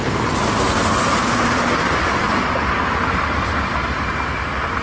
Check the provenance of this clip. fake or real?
real